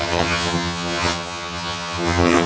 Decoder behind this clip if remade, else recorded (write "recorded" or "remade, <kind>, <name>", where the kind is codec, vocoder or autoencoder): remade, vocoder, HiFi-GAN